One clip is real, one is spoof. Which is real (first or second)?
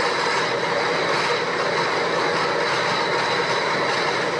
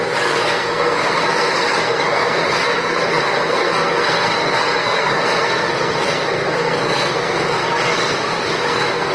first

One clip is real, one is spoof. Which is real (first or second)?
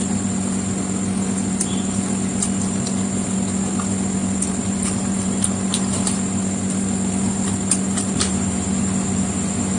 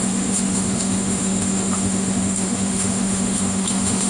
first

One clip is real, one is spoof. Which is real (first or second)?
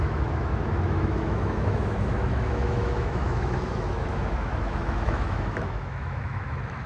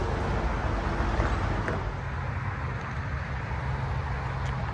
second